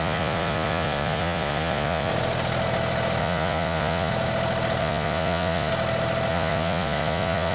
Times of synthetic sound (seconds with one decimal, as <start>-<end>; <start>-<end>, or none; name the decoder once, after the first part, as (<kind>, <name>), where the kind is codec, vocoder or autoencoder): 0.0-2.1 (vocoder, Vocos); 3.2-4.1; 4.8-5.7; 6.3-7.5